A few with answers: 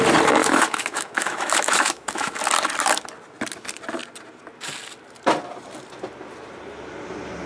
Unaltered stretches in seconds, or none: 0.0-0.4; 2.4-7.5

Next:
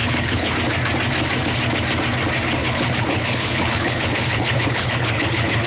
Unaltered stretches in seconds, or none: 0.5-2.6

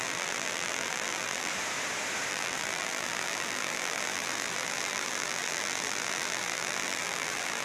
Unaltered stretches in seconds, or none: 1.5-2.3

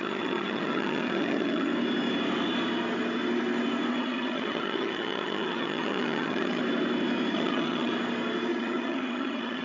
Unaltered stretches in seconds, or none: 1.7-3.9; 6.6-7.3; 7.9-8.5